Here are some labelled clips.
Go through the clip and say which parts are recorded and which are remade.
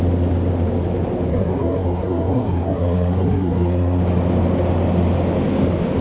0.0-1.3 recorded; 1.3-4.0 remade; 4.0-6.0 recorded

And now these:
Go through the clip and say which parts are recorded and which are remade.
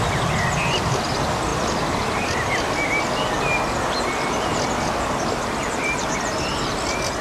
0.0-7.2 recorded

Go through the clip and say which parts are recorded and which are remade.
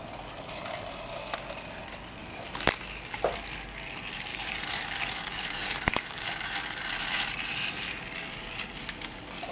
0.0-4.3 recorded; 4.3-6.3 remade; 6.3-9.5 recorded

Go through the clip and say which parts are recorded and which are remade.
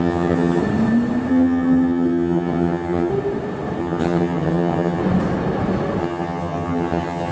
0.0-0.6 remade; 0.6-1.3 recorded; 1.3-3.1 remade; 3.1-3.8 recorded; 3.8-5.0 remade; 5.0-6.0 recorded; 6.0-7.3 remade